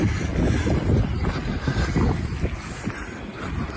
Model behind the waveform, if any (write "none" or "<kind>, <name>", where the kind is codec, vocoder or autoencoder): none